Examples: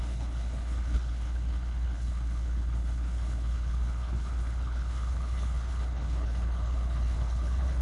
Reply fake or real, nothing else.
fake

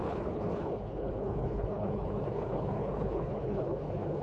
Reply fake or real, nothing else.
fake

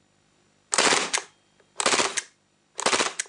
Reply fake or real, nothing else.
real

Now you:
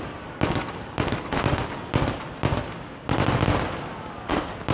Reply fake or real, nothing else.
real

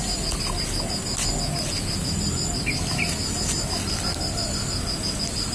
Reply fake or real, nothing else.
real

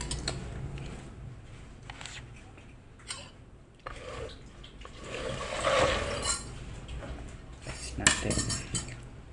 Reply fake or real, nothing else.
real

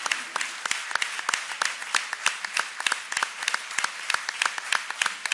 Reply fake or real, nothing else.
real